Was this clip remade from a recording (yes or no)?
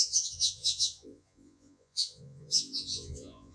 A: yes